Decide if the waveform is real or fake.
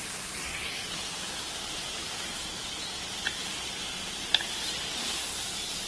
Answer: real